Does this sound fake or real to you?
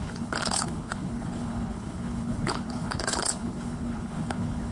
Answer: fake